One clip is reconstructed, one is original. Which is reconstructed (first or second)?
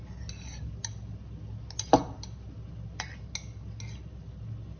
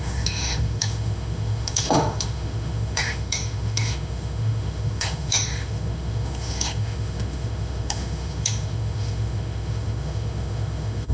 second